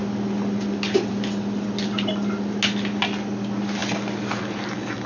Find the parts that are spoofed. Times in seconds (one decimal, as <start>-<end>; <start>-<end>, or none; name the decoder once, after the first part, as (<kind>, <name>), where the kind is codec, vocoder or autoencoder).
none